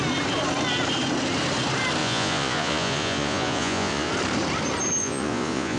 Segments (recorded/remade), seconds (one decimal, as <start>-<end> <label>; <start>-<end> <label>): 0.0-2.0 recorded; 2.0-4.1 remade; 4.1-5.0 recorded; 5.0-5.8 remade